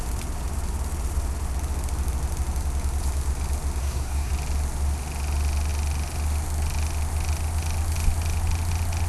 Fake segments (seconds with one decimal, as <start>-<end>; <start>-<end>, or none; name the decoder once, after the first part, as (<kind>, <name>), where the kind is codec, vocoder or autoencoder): 3.8-4.3 (codec, SNAC)